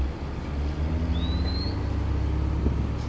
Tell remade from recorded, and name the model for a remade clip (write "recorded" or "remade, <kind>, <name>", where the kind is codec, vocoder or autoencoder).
recorded